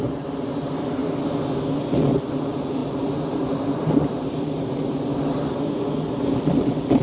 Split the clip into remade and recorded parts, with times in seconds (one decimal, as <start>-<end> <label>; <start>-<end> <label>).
0.0-2.8 recorded; 2.8-4.8 remade; 4.8-7.0 recorded